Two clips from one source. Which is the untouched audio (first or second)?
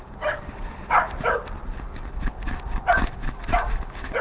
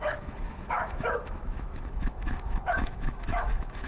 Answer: first